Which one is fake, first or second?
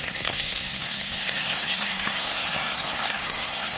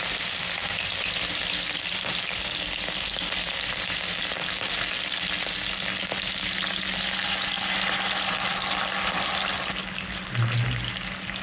first